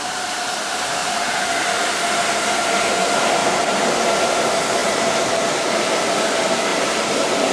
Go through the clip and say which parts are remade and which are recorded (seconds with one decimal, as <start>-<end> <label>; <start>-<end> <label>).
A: 0.0-1.0 recorded; 1.0-1.7 remade; 1.7-3.4 recorded; 3.4-4.0 remade; 4.0-6.7 recorded; 6.7-7.5 remade